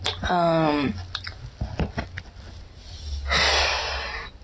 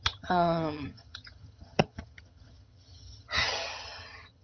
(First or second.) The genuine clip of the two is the first